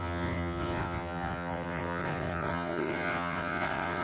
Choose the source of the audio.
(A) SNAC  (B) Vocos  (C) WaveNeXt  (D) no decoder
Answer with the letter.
C